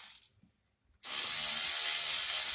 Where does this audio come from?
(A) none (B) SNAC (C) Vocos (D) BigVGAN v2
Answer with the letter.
A